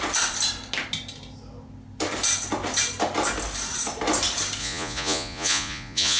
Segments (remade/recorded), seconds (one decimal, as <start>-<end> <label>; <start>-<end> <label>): 0.0-4.6 recorded; 4.6-6.2 remade